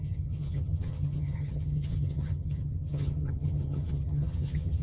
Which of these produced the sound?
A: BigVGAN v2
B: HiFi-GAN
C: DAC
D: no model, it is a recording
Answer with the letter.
B